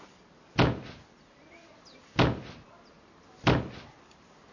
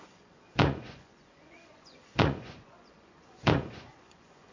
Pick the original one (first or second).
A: first